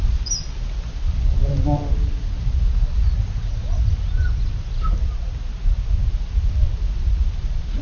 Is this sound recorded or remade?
recorded